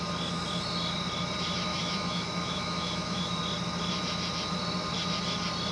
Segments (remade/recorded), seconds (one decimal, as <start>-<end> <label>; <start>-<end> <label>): 0.0-1.7 recorded; 1.7-3.4 remade; 3.4-5.7 recorded